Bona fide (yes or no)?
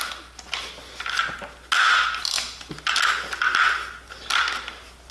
yes